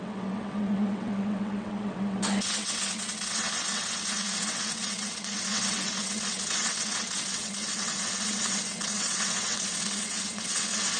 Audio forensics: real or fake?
fake